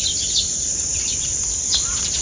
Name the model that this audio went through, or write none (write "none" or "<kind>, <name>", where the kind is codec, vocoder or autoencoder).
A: none